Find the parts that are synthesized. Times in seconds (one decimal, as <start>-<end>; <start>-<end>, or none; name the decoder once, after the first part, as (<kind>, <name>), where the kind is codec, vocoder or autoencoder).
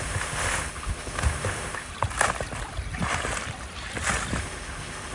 0.0-1.9 (autoencoder, DAC-VAE); 4.4-5.1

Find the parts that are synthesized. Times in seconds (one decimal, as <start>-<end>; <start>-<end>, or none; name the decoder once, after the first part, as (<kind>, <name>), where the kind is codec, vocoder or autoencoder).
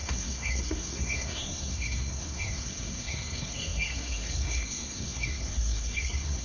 0.0-6.4 (codec, SNAC)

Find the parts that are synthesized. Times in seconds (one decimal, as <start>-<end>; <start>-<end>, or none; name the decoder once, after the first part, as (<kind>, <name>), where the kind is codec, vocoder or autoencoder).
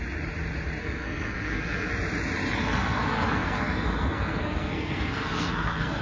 0.8-1.9 (codec, SNAC); 2.6-6.0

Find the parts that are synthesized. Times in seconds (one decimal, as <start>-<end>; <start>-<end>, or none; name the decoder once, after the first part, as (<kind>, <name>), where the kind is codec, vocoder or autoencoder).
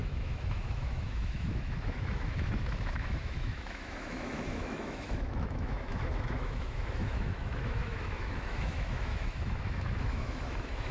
0.0-10.9 (autoencoder, DAC-VAE)